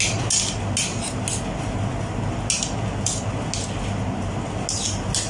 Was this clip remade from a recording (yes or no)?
no